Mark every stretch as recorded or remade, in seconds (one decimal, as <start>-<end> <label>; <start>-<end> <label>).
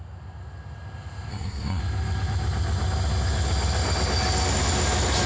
0.0-1.3 recorded; 1.3-1.8 remade; 1.8-5.3 recorded